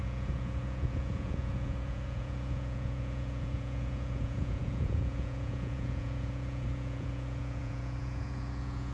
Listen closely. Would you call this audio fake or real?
fake